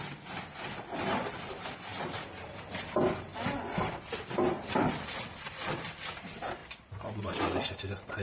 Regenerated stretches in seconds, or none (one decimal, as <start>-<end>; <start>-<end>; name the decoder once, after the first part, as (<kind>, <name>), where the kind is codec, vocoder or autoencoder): 1.9-2.7 (vocoder, BigVGAN v2); 6.6-7.2